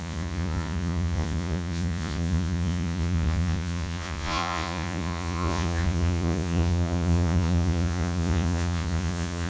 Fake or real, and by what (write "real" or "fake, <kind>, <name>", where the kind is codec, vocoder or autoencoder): fake, vocoder, Vocos